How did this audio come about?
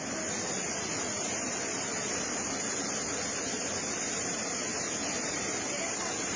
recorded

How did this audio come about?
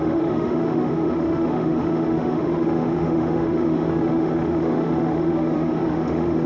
remade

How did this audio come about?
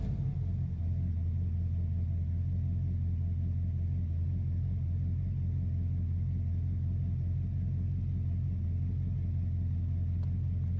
recorded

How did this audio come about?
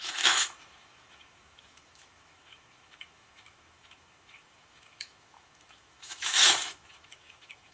remade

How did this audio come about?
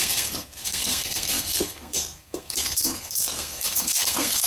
remade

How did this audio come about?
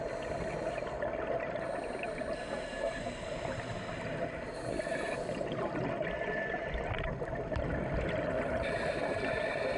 recorded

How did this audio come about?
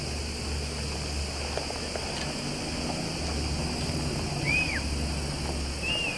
recorded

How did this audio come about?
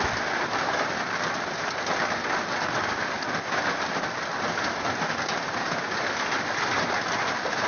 recorded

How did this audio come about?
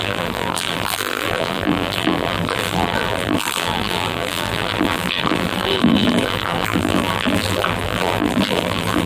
remade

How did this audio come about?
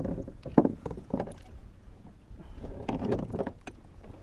remade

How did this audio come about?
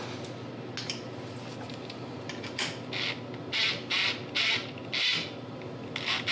recorded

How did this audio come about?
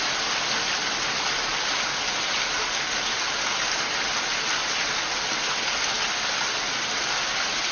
recorded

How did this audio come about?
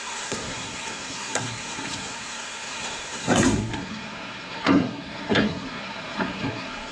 remade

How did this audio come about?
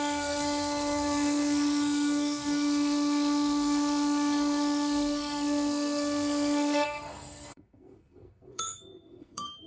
remade